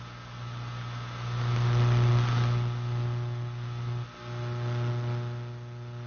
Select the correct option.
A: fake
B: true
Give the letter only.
B